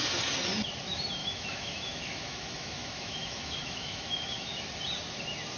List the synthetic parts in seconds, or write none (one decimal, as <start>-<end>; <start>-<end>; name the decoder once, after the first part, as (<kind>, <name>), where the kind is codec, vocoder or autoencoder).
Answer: 1.2-4.6 (autoencoder, DAC-VAE)